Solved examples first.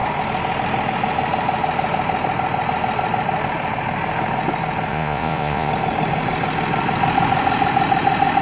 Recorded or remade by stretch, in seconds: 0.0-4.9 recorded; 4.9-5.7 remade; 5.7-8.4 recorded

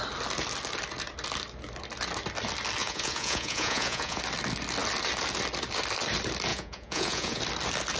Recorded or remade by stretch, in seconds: 0.0-2.8 recorded; 2.8-4.2 remade; 4.2-6.5 recorded; 6.5-7.4 remade; 7.4-8.0 recorded

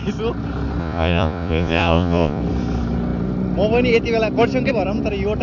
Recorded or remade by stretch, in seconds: 0.0-0.8 recorded; 0.8-2.4 remade; 2.4-5.4 recorded

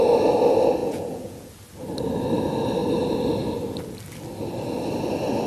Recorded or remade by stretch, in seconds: 0.0-0.8 recorded; 0.8-1.5 remade; 1.5-5.5 recorded

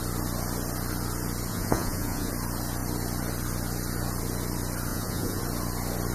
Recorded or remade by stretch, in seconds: 0.0-1.5 recorded; 1.5-2.3 remade; 2.3-4.9 recorded; 4.9-5.4 remade; 5.4-6.1 recorded

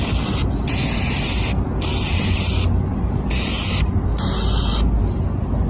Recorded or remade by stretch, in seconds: 0.0-5.7 recorded

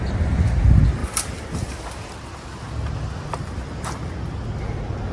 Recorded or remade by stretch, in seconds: 0.0-5.1 recorded

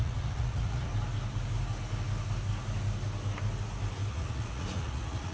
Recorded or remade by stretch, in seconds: 0.0-0.9 remade; 0.9-4.1 recorded; 4.1-5.3 remade